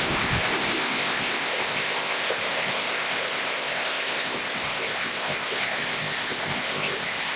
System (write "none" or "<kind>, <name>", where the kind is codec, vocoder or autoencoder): codec, ZipCodec